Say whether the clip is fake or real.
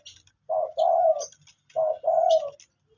real